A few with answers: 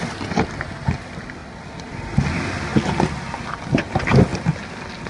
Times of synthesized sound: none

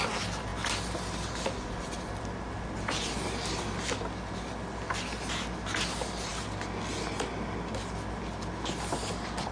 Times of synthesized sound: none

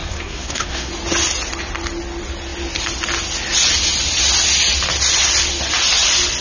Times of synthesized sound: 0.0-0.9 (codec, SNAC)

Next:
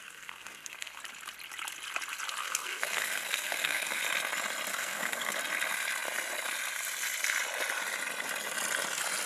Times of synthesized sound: 0.0-1.0 (codec, SNAC); 2.4-4.0; 4.7-5.4

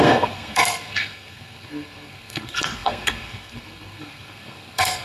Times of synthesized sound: 0.0-5.0 (codec, SNAC)